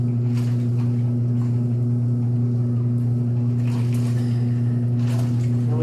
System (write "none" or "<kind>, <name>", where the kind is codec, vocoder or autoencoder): none